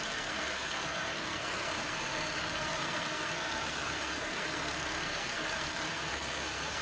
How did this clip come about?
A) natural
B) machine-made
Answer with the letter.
B